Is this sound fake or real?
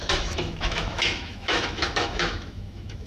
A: fake